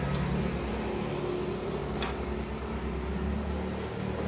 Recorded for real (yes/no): yes